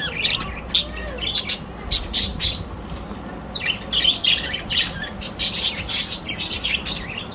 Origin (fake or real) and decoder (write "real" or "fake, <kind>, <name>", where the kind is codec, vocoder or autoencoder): real